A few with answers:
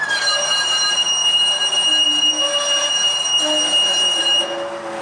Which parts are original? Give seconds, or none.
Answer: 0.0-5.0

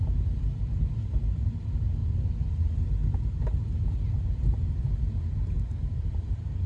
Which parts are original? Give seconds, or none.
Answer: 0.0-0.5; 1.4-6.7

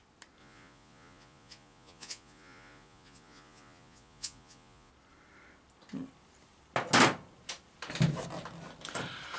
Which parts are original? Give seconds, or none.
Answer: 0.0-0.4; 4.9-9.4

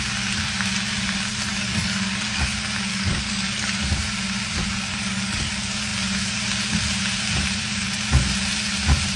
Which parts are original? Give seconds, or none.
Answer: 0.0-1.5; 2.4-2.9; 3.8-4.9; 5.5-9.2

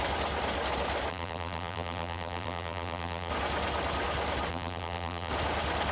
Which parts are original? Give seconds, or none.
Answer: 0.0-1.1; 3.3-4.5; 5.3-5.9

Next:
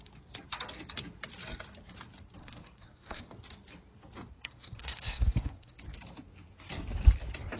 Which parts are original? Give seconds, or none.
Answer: 0.0-2.4; 3.2-4.3; 5.8-7.6

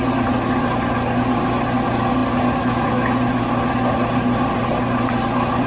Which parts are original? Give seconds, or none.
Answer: 0.0-5.7

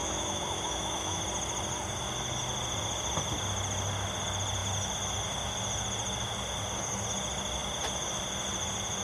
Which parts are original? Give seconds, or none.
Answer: 1.2-9.0